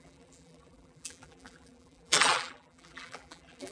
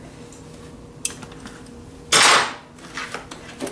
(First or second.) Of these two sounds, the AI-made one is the first